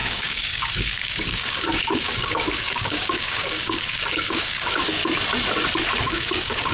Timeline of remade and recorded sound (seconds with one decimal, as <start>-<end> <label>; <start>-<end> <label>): 0.0-5.0 remade; 5.0-6.0 recorded; 6.0-6.7 remade